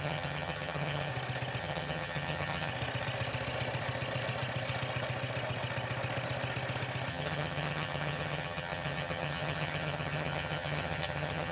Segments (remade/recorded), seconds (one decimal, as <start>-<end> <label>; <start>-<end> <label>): 0.0-1.1 remade; 1.1-1.6 recorded; 1.6-2.7 remade; 2.7-7.1 recorded; 7.1-11.5 remade